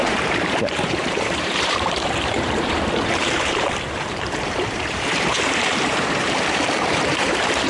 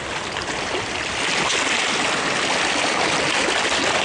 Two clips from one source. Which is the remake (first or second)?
first